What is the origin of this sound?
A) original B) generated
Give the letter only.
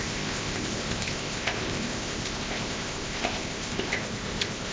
B